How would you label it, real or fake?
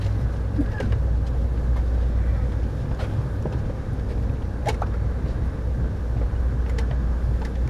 real